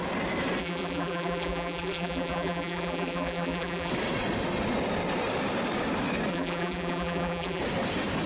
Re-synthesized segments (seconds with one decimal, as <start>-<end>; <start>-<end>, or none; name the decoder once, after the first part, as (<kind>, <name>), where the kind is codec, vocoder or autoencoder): 0.6-3.9 (vocoder, BigVGAN v2); 6.3-7.6